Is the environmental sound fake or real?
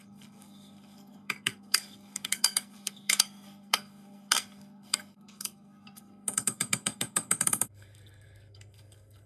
fake